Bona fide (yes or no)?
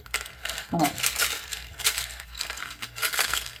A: no